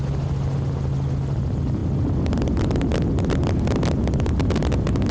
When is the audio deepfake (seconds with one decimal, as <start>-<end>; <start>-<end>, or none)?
none

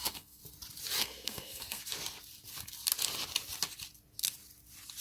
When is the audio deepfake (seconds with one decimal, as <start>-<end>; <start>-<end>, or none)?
0.0-0.4; 1.0-1.8